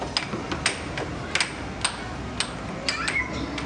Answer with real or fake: real